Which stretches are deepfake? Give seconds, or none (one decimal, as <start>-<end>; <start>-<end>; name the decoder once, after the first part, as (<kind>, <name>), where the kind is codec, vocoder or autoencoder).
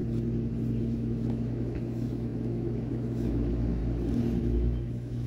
0.8-3.8 (autoencoder, DAC-VAE); 4.4-5.3